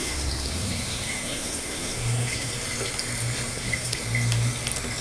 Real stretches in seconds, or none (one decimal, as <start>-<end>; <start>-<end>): 2.5-3.5; 4.0-5.0